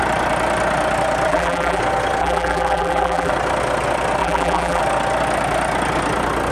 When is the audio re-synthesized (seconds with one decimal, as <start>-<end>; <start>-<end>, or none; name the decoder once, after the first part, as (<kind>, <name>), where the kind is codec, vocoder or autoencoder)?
1.3-1.8 (vocoder, BigVGAN v2); 2.2-3.3; 4.2-4.8